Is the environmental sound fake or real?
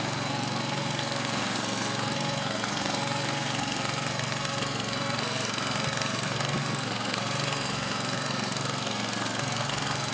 fake